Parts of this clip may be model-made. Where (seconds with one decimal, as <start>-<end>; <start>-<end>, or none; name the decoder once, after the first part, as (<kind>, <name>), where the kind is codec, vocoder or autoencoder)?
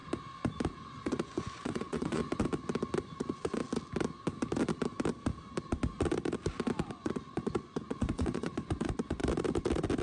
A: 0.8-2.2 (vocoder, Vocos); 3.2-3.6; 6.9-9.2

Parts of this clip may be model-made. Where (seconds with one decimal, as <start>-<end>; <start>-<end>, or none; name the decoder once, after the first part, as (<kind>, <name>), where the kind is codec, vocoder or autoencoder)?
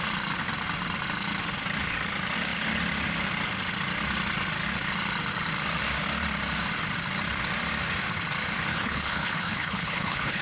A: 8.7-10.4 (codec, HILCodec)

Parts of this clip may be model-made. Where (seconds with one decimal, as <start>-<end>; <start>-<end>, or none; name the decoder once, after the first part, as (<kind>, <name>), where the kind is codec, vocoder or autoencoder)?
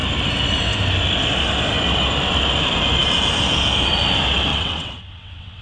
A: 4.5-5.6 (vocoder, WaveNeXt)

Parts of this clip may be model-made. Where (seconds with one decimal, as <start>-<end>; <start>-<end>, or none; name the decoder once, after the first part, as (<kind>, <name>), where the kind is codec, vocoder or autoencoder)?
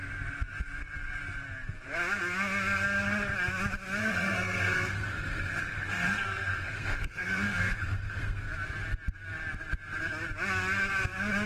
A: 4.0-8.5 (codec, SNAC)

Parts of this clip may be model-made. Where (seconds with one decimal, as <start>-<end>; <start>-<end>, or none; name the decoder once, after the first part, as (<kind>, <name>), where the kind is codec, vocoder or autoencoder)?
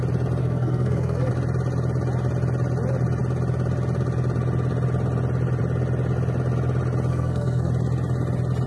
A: 0.4-1.3 (codec, SNAC); 7.1-7.7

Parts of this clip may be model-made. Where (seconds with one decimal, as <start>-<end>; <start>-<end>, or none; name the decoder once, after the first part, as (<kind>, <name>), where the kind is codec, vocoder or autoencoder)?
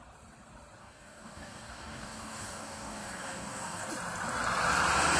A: 0.8-3.9 (codec, DAC)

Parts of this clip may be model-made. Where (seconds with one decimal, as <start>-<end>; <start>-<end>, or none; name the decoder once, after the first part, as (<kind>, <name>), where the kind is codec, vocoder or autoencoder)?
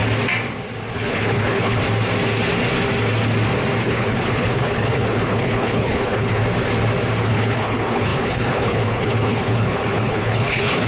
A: 0.9-1.8 (codec, HILCodec); 3.8-6.4; 7.2-10.9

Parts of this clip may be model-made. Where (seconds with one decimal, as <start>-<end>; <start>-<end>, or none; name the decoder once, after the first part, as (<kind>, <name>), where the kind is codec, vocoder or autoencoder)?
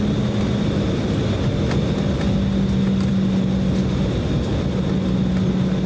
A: none